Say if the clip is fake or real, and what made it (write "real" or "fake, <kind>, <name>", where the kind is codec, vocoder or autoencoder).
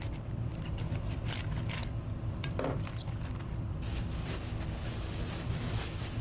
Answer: fake, vocoder, BigVGAN v2